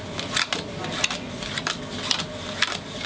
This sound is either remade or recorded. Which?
recorded